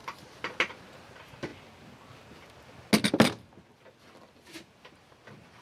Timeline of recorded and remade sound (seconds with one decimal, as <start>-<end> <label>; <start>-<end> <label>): 0.0-5.6 recorded